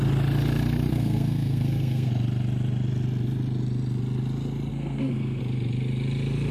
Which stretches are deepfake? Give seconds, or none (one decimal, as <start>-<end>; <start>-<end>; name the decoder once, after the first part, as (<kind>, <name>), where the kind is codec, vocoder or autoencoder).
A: 0.9-2.1 (codec, SNAC); 4.7-5.4